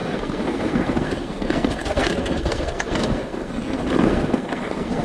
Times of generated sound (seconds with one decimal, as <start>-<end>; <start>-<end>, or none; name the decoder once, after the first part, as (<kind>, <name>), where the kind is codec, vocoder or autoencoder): 0.0-5.0 (codec, SNAC)